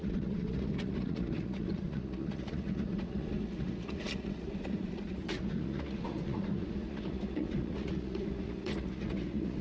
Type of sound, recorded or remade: remade